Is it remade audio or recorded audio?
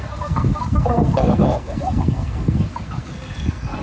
remade